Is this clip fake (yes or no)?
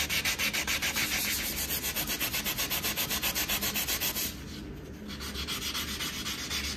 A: no